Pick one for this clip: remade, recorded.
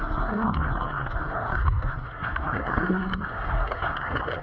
remade